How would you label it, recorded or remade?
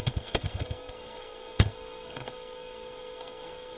remade